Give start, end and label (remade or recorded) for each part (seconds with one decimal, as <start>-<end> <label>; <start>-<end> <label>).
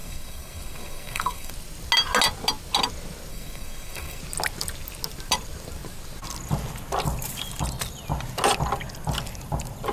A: 0.0-1.5 remade; 1.5-3.3 recorded; 3.3-4.2 remade; 4.2-9.9 recorded